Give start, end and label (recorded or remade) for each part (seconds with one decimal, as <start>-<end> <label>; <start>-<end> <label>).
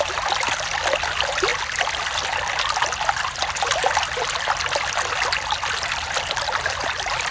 0.0-7.3 recorded